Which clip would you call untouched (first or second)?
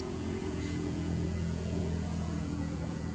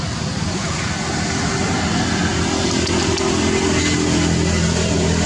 second